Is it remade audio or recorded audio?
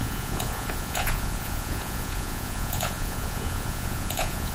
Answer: remade